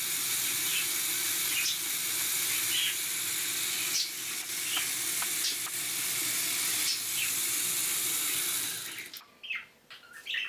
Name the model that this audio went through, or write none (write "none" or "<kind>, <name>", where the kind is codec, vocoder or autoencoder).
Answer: none